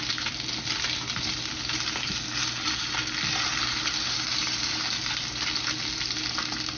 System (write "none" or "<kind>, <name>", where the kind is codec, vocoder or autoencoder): none